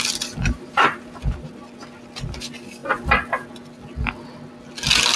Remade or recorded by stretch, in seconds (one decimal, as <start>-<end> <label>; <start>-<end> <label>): 0.0-0.4 recorded; 0.4-1.5 remade; 1.5-5.2 recorded